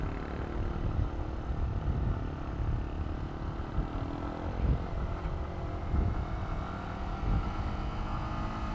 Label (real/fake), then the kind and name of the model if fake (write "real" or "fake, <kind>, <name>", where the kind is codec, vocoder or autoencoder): real